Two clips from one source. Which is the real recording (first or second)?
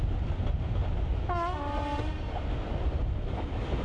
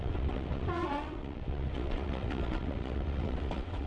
first